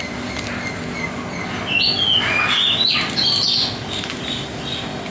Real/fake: real